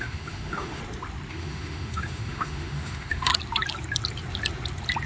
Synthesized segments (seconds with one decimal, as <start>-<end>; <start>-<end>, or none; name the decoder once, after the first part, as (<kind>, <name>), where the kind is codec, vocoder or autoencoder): 0.0-0.8 (autoencoder, DAC-VAE); 1.3-3.3